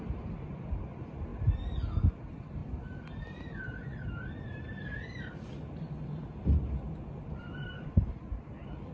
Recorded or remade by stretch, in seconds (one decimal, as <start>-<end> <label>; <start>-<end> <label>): 0.0-1.3 remade; 1.3-2.1 recorded; 2.1-8.9 remade

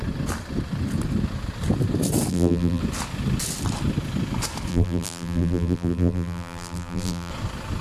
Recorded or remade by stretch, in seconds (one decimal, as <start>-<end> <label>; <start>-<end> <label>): 0.0-2.3 recorded; 2.3-2.8 remade; 2.8-4.7 recorded; 4.7-7.3 remade; 7.3-7.8 recorded

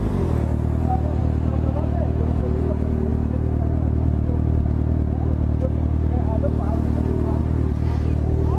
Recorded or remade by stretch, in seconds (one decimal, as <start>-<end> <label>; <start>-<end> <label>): 0.0-8.6 recorded

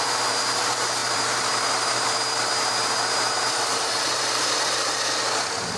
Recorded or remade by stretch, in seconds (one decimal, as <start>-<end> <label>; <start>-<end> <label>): 0.0-1.0 recorded; 1.0-4.5 remade; 4.5-5.8 recorded

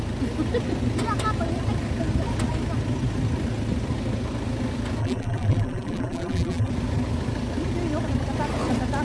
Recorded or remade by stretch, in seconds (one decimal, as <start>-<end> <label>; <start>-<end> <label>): 0.0-5.0 recorded; 5.0-6.7 remade; 6.7-9.0 recorded

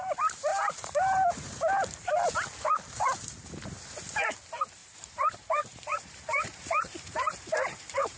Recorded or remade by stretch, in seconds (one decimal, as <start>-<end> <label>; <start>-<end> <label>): 0.0-0.5 recorded; 0.5-2.1 remade; 2.1-4.8 recorded; 4.8-8.2 remade